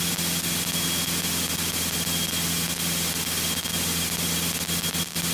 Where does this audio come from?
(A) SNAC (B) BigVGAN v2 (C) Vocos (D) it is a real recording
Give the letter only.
D